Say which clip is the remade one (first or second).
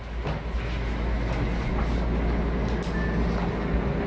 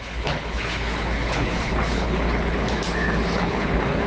second